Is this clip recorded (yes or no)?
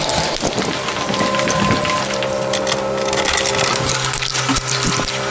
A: yes